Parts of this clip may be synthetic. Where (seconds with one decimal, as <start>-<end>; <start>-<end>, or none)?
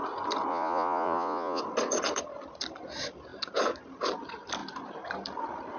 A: 0.5-1.6